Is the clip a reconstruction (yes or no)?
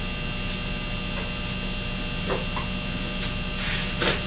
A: no